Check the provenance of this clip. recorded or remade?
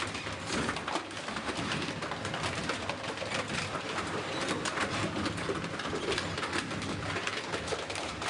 remade